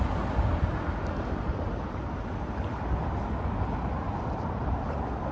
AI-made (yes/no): no